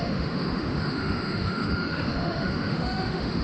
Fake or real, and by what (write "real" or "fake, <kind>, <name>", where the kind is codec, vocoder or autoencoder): fake, autoencoder, DAC-VAE